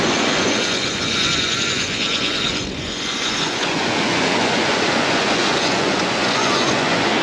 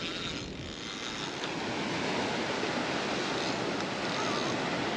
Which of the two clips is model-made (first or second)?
first